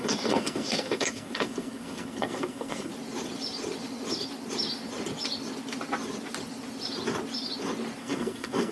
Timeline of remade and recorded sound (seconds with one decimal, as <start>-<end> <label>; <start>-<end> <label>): 0.0-2.9 remade; 2.9-8.0 recorded; 8.0-8.7 remade